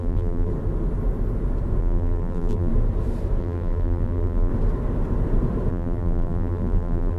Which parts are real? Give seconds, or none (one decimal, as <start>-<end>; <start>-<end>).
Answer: 0.5-1.8; 2.7-3.4; 4.5-5.7